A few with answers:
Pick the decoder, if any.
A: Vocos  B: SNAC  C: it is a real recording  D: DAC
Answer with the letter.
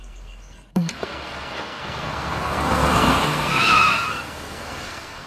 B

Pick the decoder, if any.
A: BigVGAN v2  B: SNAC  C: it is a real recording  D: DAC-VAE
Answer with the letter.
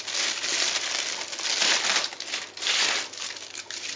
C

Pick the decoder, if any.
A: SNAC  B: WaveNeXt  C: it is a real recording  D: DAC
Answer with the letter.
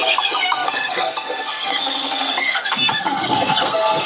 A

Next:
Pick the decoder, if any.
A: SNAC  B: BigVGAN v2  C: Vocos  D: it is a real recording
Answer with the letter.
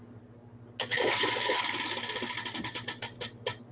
D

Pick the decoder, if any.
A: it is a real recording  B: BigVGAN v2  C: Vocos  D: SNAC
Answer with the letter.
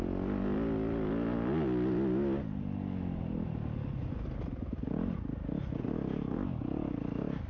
A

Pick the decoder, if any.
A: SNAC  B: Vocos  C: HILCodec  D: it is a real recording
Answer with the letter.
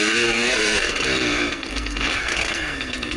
A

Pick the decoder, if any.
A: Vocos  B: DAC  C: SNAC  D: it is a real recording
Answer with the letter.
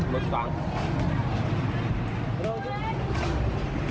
D